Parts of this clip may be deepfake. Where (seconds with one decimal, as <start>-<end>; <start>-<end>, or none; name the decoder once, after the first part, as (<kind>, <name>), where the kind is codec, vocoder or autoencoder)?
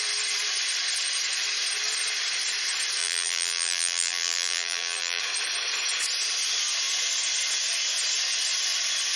3.0-5.2 (vocoder, BigVGAN v2)